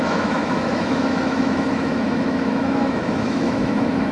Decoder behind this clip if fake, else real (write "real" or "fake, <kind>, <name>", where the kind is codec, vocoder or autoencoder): fake, autoencoder, DAC-VAE